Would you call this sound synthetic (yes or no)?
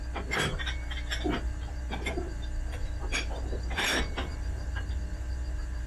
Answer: yes